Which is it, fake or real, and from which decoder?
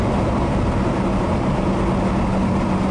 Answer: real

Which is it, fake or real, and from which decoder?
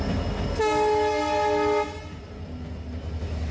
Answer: real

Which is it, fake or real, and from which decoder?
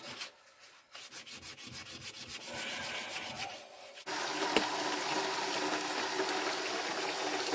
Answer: real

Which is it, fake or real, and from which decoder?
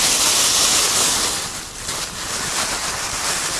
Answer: real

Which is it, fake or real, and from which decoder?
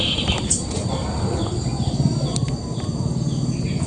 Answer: real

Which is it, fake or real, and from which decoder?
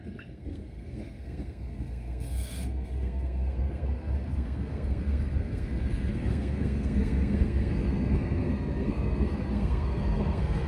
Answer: fake, codec, SNAC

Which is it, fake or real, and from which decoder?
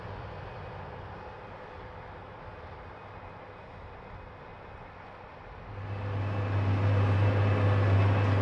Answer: real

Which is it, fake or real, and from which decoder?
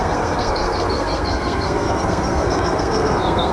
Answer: fake, codec, SNAC